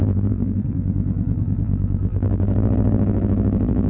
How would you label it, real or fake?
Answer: fake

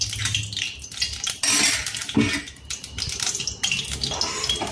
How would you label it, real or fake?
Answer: real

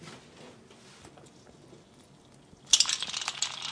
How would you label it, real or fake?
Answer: real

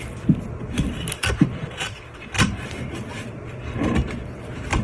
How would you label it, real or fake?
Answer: fake